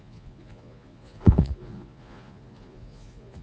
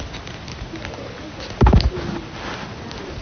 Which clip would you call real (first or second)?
second